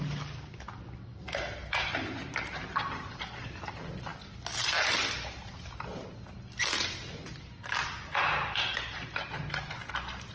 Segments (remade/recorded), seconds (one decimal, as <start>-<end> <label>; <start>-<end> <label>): 0.0-10.3 recorded